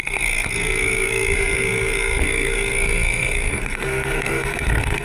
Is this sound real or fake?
fake